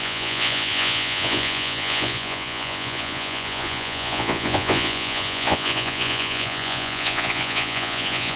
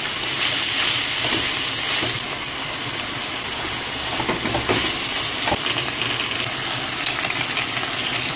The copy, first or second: first